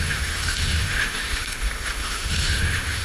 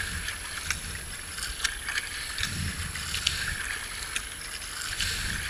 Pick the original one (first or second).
second